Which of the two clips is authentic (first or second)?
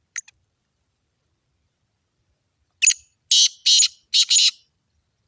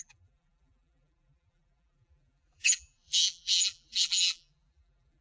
first